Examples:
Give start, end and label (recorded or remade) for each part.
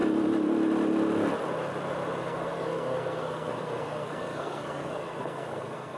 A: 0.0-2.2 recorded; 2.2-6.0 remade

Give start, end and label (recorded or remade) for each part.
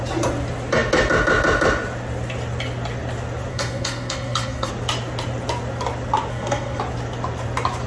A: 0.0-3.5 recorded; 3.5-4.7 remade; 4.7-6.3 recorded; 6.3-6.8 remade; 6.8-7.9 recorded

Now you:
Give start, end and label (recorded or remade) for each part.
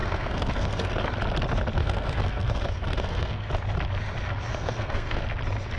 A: 0.0-1.0 remade; 1.0-1.8 recorded; 1.8-3.5 remade; 3.5-4.5 recorded; 4.5-5.2 remade; 5.2-5.8 recorded